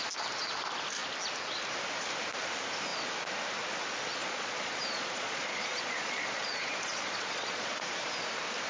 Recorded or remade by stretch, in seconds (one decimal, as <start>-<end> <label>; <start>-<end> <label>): 0.0-4.2 recorded; 4.2-7.8 remade; 7.8-8.7 recorded